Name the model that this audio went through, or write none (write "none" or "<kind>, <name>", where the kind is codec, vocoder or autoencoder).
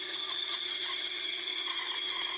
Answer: vocoder, Vocos